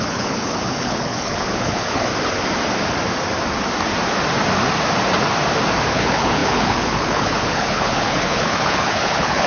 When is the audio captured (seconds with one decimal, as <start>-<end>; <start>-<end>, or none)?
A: 2.1-5.9